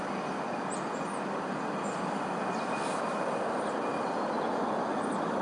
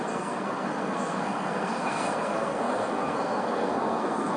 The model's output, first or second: second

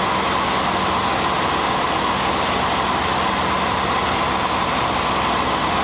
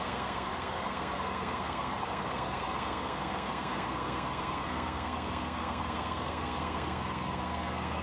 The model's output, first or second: second